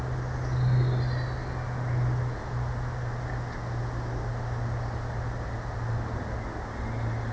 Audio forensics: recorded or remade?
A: recorded